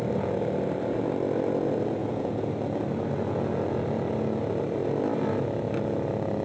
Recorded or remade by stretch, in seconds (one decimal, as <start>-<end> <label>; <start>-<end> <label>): 0.0-2.0 recorded; 2.0-2.5 remade; 2.5-6.4 recorded